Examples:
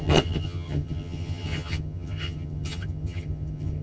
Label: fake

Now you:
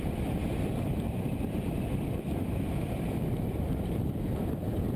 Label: real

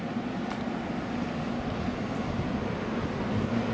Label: real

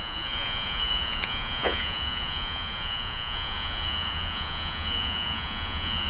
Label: fake